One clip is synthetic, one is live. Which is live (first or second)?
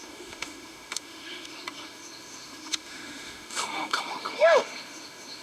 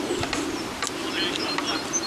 second